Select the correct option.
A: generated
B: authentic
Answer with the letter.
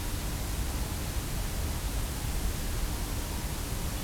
B